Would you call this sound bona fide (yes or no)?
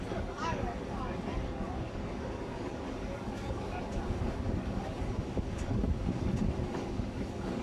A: no